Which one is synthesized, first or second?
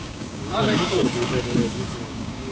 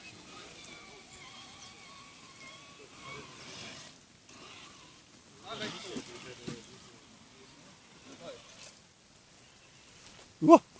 first